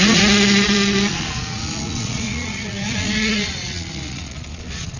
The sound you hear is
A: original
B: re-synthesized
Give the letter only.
B